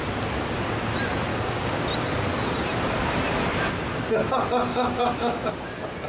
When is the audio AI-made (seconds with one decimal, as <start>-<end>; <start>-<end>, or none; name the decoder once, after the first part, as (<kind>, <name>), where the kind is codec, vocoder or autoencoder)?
1.3-1.8 (codec, DAC); 4.7-5.5